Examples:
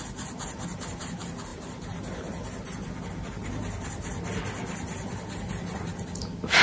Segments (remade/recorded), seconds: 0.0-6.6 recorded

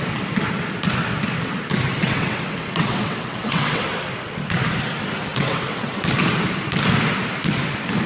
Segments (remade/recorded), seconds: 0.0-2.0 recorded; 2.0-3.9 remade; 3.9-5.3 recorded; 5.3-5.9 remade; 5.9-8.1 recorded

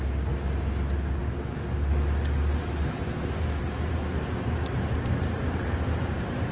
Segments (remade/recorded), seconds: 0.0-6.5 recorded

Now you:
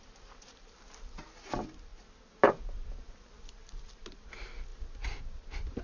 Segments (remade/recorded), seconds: 0.0-5.8 recorded

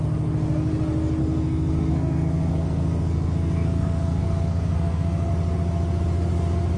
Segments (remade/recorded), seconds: 0.0-1.2 recorded; 1.2-5.3 remade; 5.3-6.8 recorded

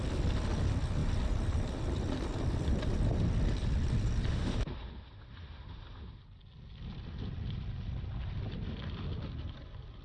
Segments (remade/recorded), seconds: 0.0-4.3 recorded; 4.3-6.2 remade; 6.2-10.0 recorded

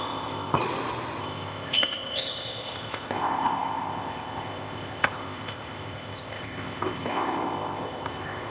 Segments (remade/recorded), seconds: 0.0-0.6 remade; 0.6-1.2 recorded; 1.2-8.5 remade

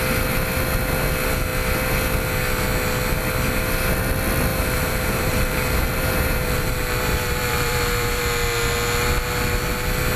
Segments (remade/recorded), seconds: 0.0-4.5 recorded; 4.5-8.2 remade; 8.2-10.2 recorded